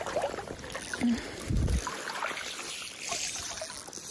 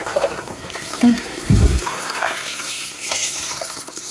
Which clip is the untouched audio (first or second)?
first